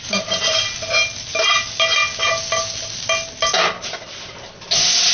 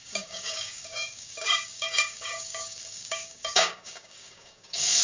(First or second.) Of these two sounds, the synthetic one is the second